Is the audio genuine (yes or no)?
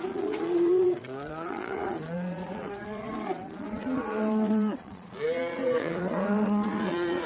no